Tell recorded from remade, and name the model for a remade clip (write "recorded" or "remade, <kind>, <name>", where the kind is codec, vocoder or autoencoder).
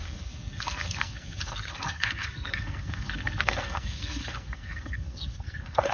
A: remade, codec, SNAC